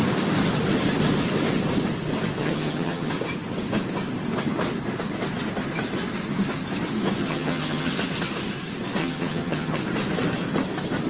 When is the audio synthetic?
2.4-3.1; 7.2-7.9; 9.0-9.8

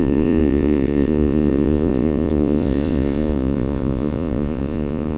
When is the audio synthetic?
0.0-5.2

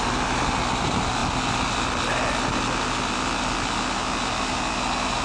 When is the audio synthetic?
none